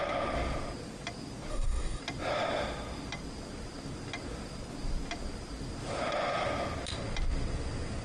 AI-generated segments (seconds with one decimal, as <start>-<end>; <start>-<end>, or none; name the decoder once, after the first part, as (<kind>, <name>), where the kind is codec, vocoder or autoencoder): 1.5-2.0 (codec, SNAC)